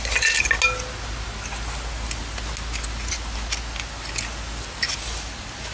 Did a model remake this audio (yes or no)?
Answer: no